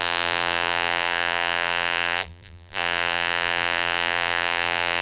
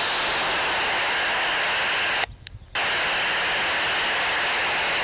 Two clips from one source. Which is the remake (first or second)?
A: first